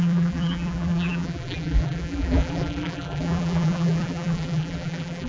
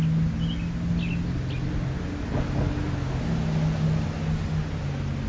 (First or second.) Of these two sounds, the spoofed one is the first